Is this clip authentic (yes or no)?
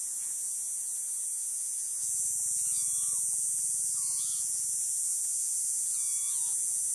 no